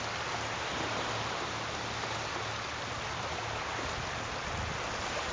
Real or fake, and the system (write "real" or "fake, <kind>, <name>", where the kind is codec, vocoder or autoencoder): real